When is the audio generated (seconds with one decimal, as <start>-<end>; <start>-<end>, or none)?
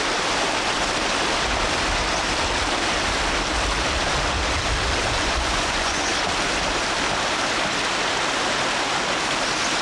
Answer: 5.0-6.1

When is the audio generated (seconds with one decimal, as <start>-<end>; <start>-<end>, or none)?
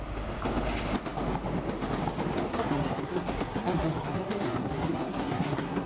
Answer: 2.5-5.9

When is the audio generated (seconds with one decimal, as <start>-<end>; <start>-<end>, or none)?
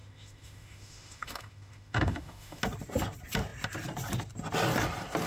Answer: 0.0-2.6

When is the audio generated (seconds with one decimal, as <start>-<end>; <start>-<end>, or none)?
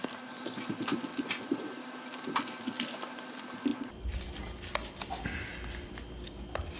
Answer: none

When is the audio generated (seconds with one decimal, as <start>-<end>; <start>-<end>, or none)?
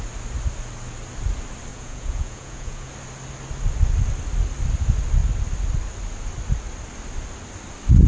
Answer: 1.7-2.9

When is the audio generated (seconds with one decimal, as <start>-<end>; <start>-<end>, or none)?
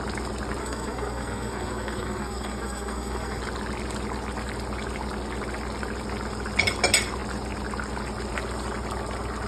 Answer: 0.6-3.4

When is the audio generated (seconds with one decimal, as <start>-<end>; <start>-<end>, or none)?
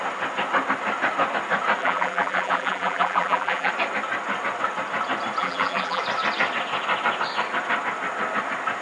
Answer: 1.8-3.7; 5.4-6.0